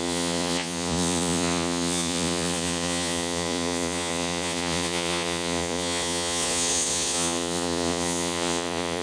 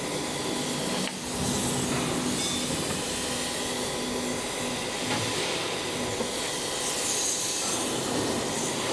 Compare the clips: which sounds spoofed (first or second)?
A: first